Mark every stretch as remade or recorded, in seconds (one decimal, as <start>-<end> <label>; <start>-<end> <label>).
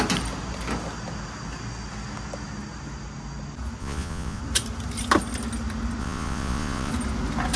0.0-3.8 recorded; 3.8-4.4 remade; 4.4-6.0 recorded; 6.0-6.9 remade; 6.9-7.6 recorded